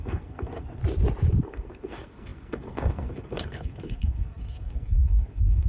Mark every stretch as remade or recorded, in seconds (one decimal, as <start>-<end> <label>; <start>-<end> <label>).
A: 0.0-0.8 remade; 0.8-1.4 recorded; 1.4-5.7 remade